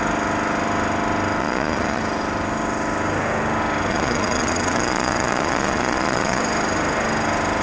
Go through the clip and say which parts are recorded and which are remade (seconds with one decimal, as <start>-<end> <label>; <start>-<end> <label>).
0.0-1.4 recorded; 1.4-2.0 remade; 2.0-3.9 recorded; 3.9-6.4 remade; 6.4-7.6 recorded